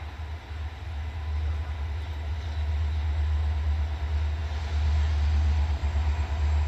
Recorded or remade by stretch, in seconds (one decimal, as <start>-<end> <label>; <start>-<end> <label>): 0.0-6.7 recorded